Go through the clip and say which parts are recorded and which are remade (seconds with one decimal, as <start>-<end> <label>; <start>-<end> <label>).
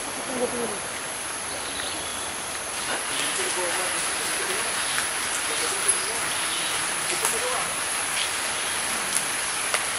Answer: 0.0-2.1 recorded; 2.1-3.0 remade; 3.0-10.0 recorded